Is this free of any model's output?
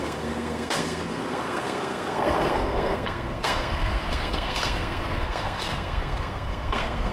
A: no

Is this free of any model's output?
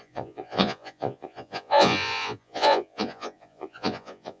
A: no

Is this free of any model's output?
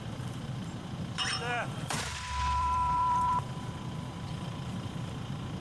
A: no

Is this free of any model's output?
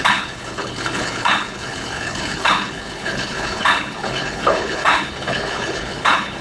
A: no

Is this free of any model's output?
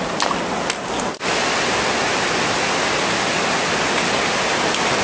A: yes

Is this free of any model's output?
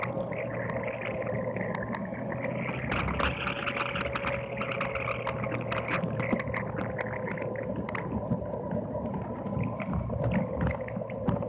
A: yes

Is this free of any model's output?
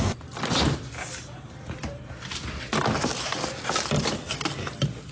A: yes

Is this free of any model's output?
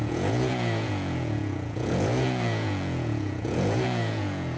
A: no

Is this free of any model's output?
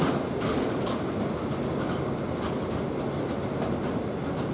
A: yes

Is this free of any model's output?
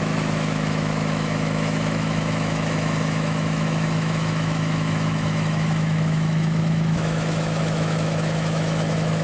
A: no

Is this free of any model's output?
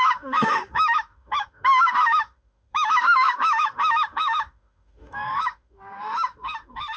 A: no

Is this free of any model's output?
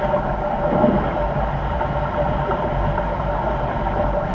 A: yes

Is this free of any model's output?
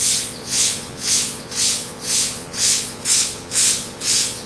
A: no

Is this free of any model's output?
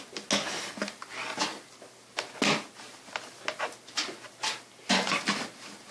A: yes